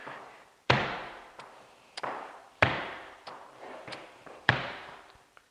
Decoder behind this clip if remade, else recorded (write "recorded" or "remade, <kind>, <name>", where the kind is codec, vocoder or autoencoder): remade, vocoder, BigVGAN v2